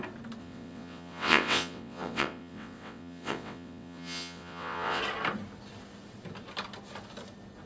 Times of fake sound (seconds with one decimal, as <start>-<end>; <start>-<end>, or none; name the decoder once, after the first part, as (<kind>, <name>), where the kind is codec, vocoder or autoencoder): 0.4-5.0 (vocoder, WaveNeXt)